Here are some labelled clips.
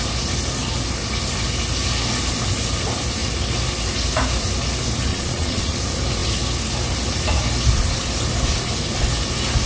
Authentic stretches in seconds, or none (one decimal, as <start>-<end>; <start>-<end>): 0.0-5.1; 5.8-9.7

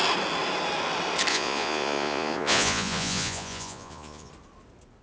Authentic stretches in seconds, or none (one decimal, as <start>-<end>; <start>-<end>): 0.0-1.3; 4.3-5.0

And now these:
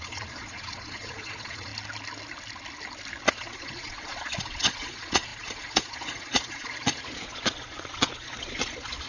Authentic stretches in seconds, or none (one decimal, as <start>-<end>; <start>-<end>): 1.7-3.3

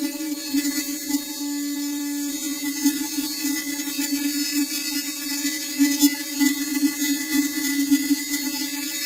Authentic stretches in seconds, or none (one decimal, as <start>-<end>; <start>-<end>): 1.4-2.3

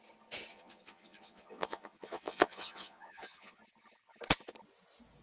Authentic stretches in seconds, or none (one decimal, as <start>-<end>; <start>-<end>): 0.0-0.5; 3.6-5.2